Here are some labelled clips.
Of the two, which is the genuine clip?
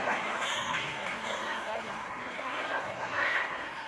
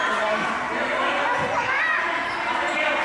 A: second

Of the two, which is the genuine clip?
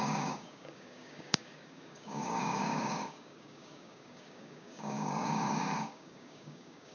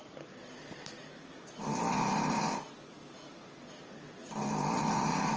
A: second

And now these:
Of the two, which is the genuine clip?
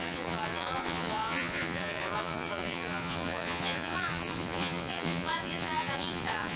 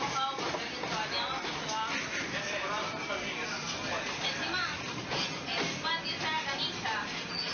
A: second